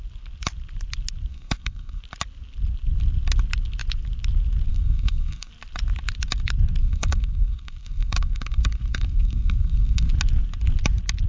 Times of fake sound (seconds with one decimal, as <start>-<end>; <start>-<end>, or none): 1.3-2.0; 4.7-5.5; 6.8-10.1